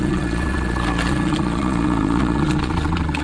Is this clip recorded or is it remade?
remade